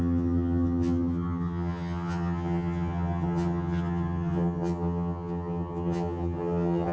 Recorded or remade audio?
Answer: remade